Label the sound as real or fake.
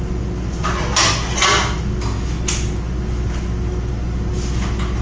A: real